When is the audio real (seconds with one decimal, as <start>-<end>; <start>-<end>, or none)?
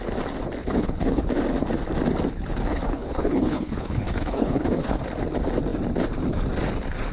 0.0-0.6; 1.2-2.7; 5.0-7.1